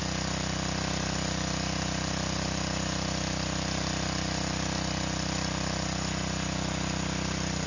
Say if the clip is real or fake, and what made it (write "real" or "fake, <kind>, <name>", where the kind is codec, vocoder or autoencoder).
real